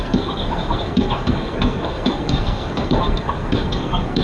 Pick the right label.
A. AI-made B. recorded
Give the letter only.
A